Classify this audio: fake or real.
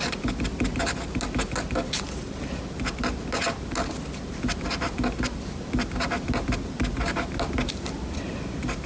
real